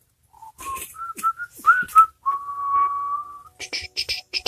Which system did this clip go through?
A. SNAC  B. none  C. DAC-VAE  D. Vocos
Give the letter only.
B